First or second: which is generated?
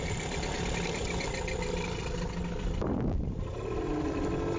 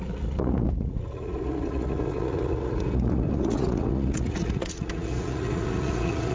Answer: second